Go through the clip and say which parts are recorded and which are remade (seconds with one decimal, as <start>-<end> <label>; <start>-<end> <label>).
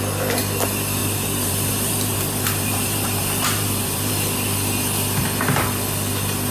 0.0-1.0 recorded; 1.0-4.1 remade; 4.1-6.5 recorded